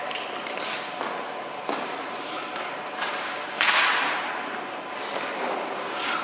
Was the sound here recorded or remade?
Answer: recorded